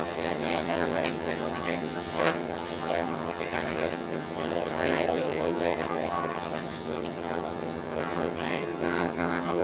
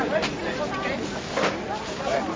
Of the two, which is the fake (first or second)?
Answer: first